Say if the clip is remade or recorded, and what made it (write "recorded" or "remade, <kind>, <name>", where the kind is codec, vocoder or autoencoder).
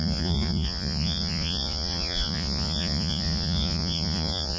remade, vocoder, Vocos